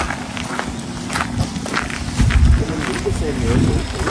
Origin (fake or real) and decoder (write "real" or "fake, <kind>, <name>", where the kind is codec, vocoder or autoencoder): real